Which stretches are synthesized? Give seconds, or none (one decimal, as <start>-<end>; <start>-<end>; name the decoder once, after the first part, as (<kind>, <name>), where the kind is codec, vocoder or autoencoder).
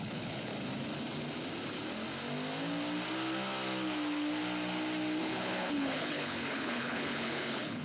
0.0-0.5 (codec, HILCodec); 5.2-7.8